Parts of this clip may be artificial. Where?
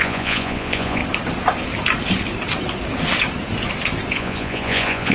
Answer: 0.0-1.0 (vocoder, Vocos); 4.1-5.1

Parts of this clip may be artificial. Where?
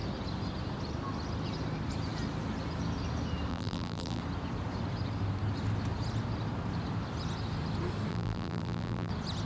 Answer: 3.5-4.2 (vocoder, BigVGAN v2); 8.1-9.1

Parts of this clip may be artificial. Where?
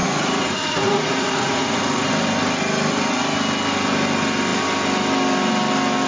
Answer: 0.0-2.1 (vocoder, Vocos)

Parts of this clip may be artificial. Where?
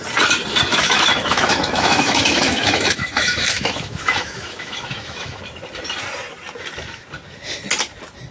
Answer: 0.7-5.4 (autoencoder, DAC-VAE)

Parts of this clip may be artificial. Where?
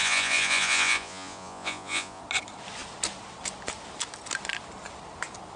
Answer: 0.0-2.2 (vocoder, Vocos)